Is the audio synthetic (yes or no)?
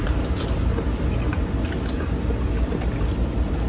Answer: no